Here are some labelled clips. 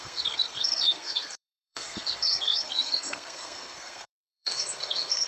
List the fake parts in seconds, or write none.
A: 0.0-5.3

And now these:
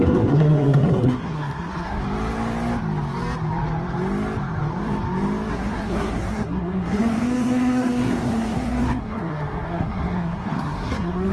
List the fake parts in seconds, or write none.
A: 0.0-2.0; 5.5-11.3

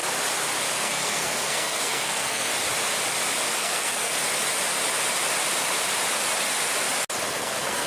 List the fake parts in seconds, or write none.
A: 0.7-2.5; 3.6-4.1; 7.3-7.9